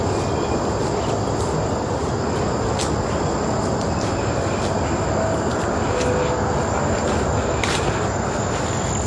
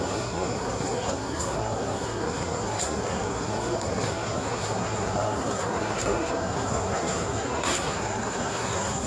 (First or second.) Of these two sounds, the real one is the first